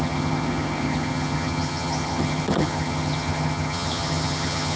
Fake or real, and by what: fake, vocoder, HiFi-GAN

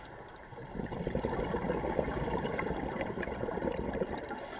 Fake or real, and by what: real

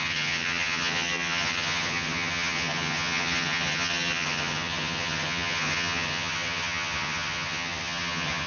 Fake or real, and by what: fake, vocoder, HiFi-GAN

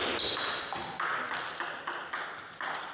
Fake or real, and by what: real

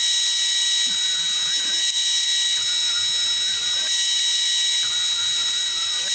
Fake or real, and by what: real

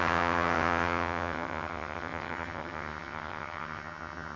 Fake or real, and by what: fake, vocoder, HiFi-GAN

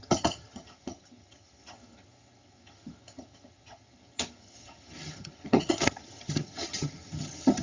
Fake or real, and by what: fake, vocoder, HiFi-GAN